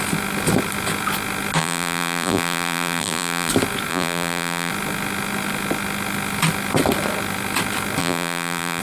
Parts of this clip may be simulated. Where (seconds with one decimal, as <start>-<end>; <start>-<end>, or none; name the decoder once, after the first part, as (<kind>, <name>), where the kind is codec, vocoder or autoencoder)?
1.6-3.5 (vocoder, BigVGAN v2); 3.9-4.7; 8.0-8.8